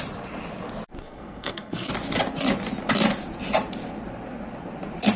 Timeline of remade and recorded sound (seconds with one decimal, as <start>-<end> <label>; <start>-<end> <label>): 0.0-1.0 recorded; 1.0-1.9 remade; 1.9-5.2 recorded